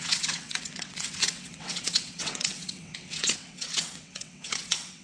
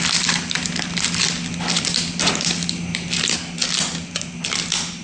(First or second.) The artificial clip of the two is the first